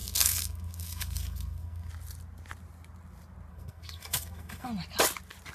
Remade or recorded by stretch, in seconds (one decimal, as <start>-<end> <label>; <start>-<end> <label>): 0.0-1.9 remade; 1.9-3.5 recorded; 3.5-4.7 remade; 4.7-5.5 recorded